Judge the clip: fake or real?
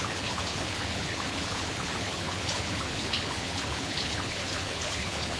fake